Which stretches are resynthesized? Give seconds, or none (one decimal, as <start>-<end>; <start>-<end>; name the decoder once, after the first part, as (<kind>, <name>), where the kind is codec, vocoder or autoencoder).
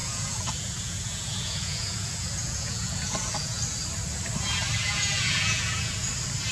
0.0-3.6 (vocoder, Vocos); 4.8-5.9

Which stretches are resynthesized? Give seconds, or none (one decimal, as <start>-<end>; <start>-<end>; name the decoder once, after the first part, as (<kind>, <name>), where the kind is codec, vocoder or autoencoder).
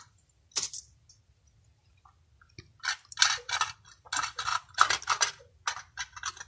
none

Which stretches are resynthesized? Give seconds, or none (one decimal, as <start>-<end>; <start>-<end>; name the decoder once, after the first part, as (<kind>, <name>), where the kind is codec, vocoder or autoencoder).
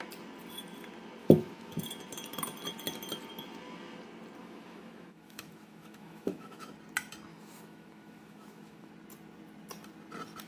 1.2-1.8 (autoencoder, DAC-VAE); 4.4-6.7; 7.3-8.9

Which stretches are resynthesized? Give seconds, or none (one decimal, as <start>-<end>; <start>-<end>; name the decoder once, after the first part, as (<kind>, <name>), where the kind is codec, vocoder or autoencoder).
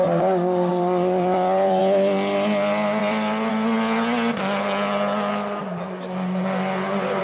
0.7-1.8 (vocoder, BigVGAN v2); 3.0-3.5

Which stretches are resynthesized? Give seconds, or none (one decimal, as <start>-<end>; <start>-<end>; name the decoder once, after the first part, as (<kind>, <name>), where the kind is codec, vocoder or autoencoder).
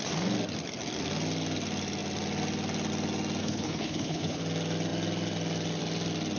3.4-4.4 (codec, HILCodec)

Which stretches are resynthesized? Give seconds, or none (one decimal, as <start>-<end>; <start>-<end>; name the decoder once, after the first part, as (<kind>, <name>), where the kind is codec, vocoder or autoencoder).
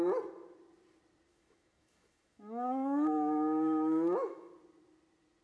1.3-4.5 (autoencoder, DAC-VAE)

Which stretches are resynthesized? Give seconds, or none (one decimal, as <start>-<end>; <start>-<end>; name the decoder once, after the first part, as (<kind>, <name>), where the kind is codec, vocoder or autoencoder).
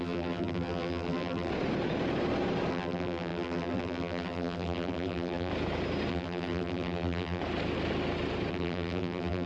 0.0-1.5 (vocoder, BigVGAN v2); 2.7-5.5; 6.1-7.4; 8.5-9.5